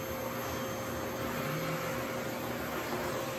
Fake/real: real